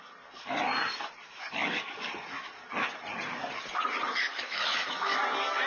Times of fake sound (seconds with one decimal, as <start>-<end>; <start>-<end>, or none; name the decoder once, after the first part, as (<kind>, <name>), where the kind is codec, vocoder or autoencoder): 4.3-5.2 (autoencoder, DAC-VAE)